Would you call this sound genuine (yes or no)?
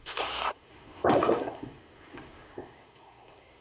no